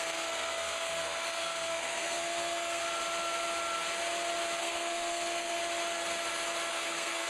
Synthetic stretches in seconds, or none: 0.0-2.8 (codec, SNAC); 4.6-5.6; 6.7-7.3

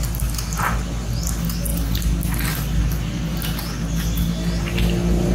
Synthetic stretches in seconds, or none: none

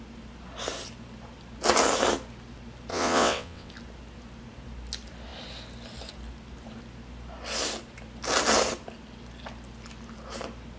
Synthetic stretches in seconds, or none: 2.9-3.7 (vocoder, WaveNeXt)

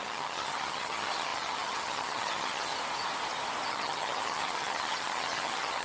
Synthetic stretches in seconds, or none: 0.0-2.7 (vocoder, HiFi-GAN); 3.7-5.8